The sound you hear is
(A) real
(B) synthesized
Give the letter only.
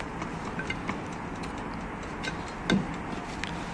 A